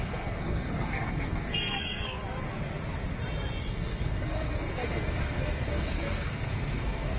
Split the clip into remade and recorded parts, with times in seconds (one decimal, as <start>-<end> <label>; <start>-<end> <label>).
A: 0.0-2.2 remade; 2.2-3.6 recorded; 3.6-7.2 remade